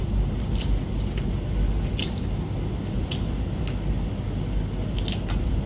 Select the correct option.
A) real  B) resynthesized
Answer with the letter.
A